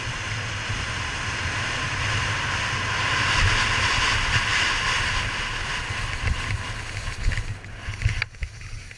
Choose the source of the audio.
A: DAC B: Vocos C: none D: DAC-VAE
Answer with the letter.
C